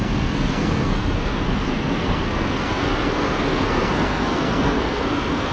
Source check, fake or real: fake